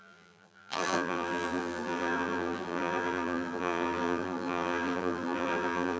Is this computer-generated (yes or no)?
yes